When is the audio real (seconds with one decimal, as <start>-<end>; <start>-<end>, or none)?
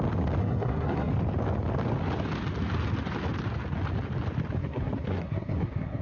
0.0-0.4; 1.1-4.6